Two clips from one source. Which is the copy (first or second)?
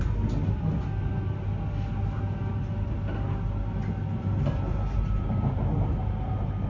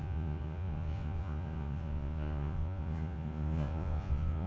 second